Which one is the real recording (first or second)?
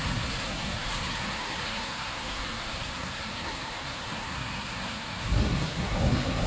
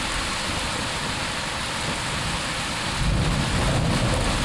second